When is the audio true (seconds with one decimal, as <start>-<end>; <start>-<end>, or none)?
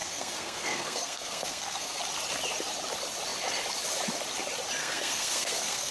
2.0-4.8